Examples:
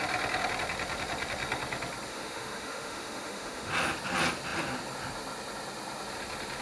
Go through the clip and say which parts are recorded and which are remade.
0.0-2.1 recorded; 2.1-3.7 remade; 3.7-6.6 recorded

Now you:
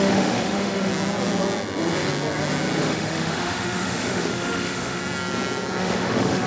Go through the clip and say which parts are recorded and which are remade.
0.0-0.9 remade; 0.9-2.8 recorded; 2.8-5.0 remade; 5.0-5.8 recorded; 5.8-6.5 remade

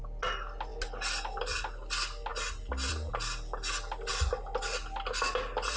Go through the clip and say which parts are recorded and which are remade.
0.0-5.8 recorded

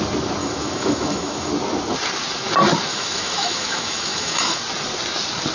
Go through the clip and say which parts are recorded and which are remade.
0.0-0.4 recorded; 0.4-1.5 remade; 1.5-2.9 recorded; 2.9-4.6 remade; 4.6-5.5 recorded

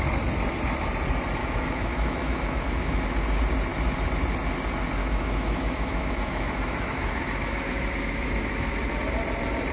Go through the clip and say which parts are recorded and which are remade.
0.0-1.4 recorded; 1.4-3.0 remade; 3.0-5.0 recorded; 5.0-9.0 remade; 9.0-9.7 recorded

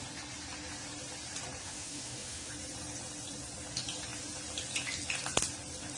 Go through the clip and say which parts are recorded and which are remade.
0.0-1.6 recorded; 1.6-2.5 remade; 2.5-6.0 recorded

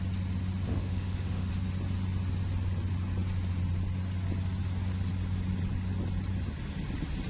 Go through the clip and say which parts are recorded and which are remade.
0.0-0.7 recorded; 0.7-1.5 remade; 1.5-7.3 recorded